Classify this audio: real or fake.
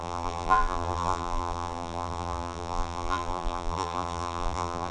fake